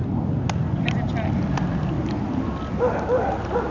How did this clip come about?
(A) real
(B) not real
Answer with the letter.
A